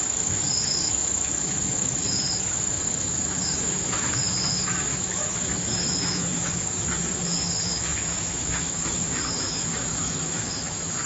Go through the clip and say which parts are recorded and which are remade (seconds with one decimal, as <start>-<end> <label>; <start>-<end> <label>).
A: 0.0-11.1 remade